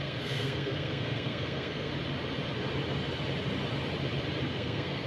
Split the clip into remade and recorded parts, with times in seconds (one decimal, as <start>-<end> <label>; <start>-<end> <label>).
0.0-1.9 remade; 1.9-4.5 recorded; 4.5-5.1 remade